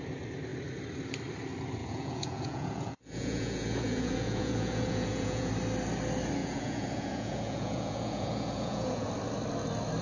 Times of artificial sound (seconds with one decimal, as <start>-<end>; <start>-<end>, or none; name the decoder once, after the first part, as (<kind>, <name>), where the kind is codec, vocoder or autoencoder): 1.8-5.5 (vocoder, Vocos); 6.4-9.1